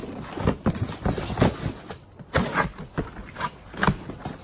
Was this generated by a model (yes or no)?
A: no